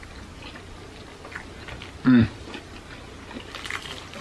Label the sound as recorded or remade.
recorded